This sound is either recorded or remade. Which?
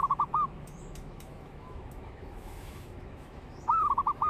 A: remade